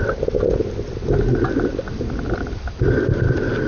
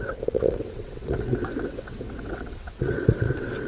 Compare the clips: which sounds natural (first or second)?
first